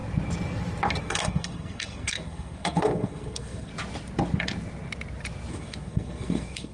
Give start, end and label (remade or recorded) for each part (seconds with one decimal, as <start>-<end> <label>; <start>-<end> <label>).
0.0-1.0 recorded; 1.0-3.7 remade; 3.7-5.5 recorded; 5.5-6.7 remade